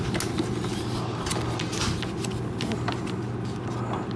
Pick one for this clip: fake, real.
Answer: real